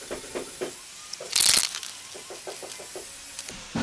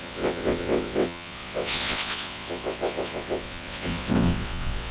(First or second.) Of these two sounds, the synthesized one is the second